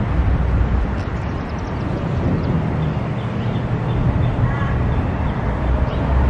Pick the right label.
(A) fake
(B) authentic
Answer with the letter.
B